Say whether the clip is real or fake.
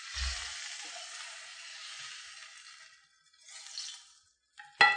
real